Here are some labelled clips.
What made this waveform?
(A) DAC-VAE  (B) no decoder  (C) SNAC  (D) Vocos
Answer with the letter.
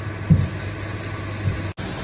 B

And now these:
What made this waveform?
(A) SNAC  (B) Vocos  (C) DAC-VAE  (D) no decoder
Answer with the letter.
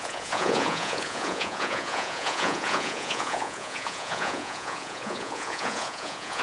B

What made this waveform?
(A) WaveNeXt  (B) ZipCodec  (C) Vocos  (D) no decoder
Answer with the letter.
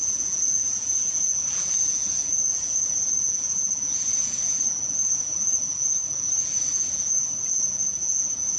C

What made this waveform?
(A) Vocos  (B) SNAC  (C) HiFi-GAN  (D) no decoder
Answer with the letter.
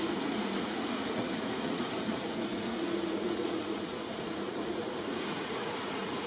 A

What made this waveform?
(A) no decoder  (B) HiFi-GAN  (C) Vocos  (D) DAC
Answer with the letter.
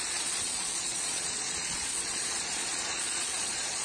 C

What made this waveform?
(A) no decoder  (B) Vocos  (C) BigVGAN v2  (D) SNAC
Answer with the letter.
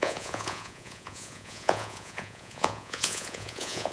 B